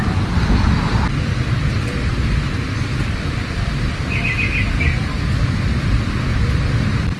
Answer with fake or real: real